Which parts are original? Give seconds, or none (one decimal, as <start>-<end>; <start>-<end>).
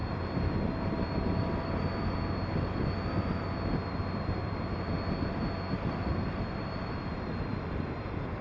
0.0-3.9; 4.9-5.7; 7.5-8.4